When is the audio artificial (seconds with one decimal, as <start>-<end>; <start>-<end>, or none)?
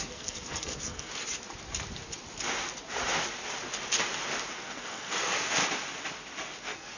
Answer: 0.0-1.1; 4.5-5.6; 6.6-7.0